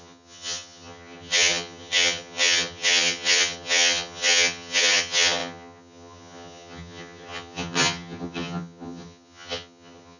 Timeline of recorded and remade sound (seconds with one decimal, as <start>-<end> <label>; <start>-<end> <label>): 0.0-10.2 remade